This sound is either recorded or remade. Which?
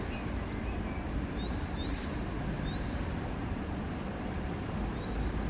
recorded